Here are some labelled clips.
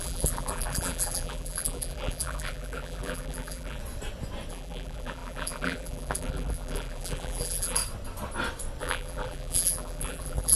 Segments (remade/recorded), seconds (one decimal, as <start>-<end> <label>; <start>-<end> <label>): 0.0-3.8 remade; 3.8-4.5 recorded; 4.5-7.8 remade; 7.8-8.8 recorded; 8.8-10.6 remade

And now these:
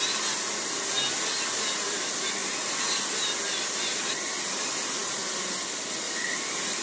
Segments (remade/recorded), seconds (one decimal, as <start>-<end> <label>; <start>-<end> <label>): 0.0-6.8 recorded

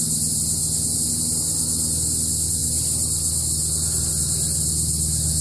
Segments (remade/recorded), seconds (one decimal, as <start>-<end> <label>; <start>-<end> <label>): 0.0-5.4 recorded

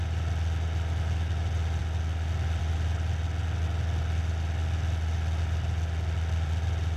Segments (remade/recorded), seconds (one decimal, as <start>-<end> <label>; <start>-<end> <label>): 0.0-7.0 recorded

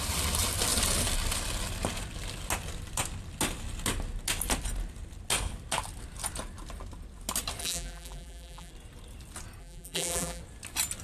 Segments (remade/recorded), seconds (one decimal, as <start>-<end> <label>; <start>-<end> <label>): 0.0-7.6 recorded; 7.6-8.7 remade; 8.7-9.6 recorded; 9.6-10.4 remade; 10.4-11.0 recorded

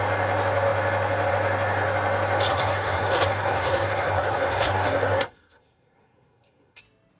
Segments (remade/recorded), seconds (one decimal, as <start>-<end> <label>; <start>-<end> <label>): 0.0-2.5 recorded; 2.5-6.8 remade; 6.8-7.2 recorded

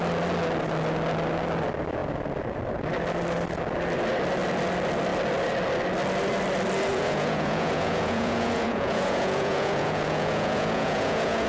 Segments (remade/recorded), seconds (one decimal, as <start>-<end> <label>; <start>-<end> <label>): 0.0-6.9 recorded; 6.9-11.5 remade